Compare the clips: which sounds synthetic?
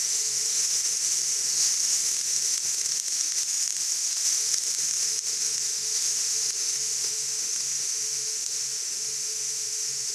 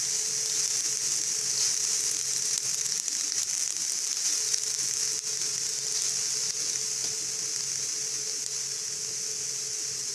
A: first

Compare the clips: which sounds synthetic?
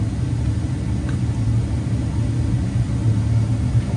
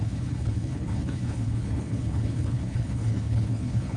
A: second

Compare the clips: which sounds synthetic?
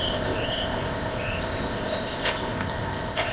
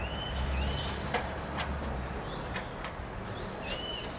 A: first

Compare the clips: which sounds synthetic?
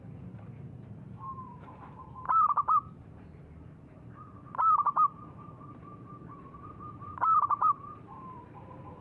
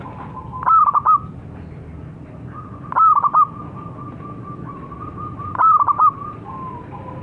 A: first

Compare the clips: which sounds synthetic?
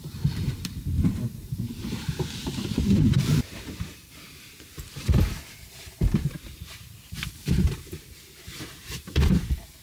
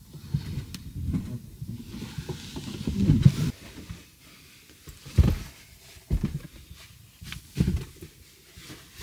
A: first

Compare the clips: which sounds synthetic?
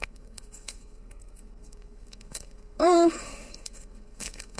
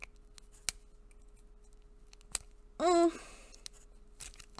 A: first